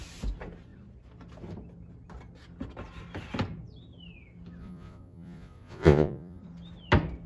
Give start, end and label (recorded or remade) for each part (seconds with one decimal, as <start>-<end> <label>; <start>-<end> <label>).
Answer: 0.0-4.6 recorded; 4.6-6.4 remade; 6.4-7.3 recorded